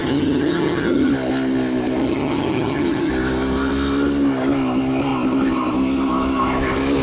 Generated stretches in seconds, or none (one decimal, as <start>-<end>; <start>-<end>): 0.0-1.1; 2.0-3.1